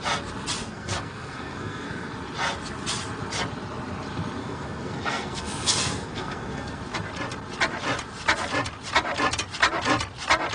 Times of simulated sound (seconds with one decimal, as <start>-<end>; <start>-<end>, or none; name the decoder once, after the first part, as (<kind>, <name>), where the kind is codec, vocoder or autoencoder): 0.6-2.1 (codec, SNAC); 4.4-6.8